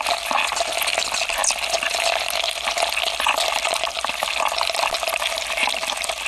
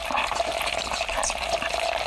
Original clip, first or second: first